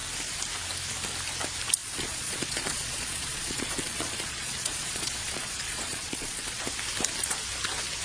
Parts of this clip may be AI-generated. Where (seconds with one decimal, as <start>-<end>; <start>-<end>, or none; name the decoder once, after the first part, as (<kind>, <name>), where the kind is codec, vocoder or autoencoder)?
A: 1.8-6.6 (vocoder, Vocos)